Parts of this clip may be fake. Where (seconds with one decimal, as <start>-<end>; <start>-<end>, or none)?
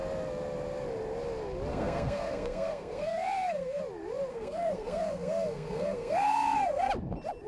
1.7-3.8; 4.3-6.9